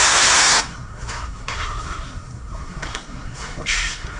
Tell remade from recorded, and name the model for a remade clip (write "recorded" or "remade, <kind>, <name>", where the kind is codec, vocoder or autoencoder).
remade, codec, SNAC